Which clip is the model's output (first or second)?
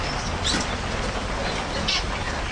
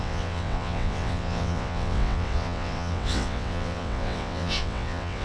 second